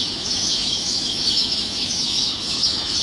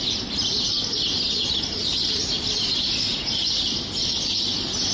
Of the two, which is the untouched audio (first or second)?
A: second